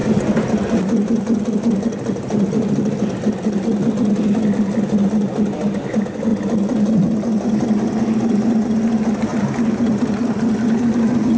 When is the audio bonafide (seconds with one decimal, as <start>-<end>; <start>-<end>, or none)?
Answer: 3.9-9.3; 10.1-11.4